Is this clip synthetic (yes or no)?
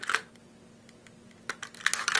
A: no